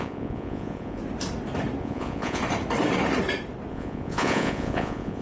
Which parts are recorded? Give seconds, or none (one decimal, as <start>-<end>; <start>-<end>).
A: 1.0-1.8; 2.4-3.7